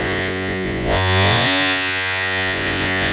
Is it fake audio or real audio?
fake